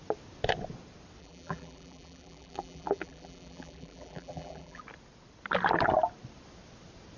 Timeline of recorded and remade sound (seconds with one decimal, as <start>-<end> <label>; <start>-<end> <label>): 0.0-1.2 recorded; 1.2-4.8 remade; 4.8-7.2 recorded